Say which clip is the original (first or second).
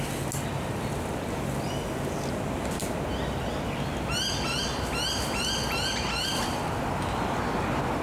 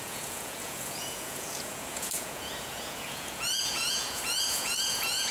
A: first